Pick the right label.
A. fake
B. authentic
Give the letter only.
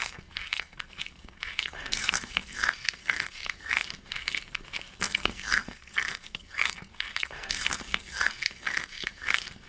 A